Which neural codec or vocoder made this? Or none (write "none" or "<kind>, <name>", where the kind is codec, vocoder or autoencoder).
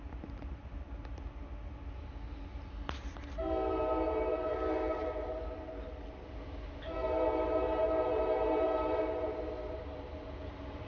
none